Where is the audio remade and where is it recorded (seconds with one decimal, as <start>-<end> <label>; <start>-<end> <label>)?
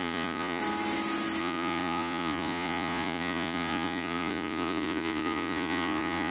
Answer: 0.0-0.6 remade; 0.6-1.4 recorded; 1.4-6.3 remade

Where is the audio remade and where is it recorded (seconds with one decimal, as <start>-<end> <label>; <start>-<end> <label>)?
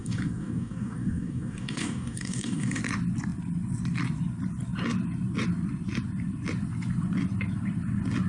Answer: 0.0-2.8 remade; 2.8-8.3 recorded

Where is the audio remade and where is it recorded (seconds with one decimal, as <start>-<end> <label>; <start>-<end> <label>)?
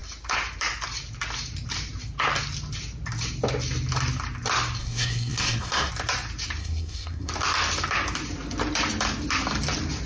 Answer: 0.0-4.8 recorded; 4.8-5.9 remade; 5.9-6.6 recorded; 6.6-7.3 remade; 7.3-10.1 recorded